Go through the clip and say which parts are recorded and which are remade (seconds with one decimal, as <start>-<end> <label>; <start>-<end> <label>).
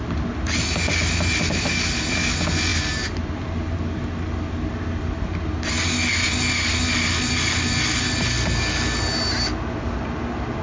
0.0-10.6 recorded